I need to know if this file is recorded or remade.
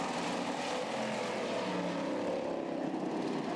recorded